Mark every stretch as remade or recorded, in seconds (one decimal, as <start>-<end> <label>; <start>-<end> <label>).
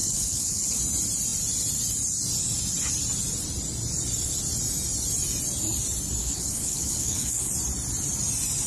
0.0-0.8 remade; 0.8-6.2 recorded; 6.2-7.5 remade; 7.5-8.7 recorded